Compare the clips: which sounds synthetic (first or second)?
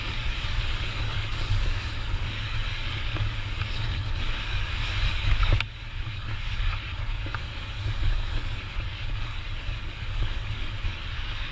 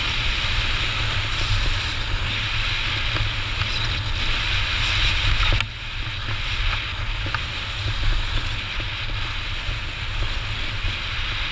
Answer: first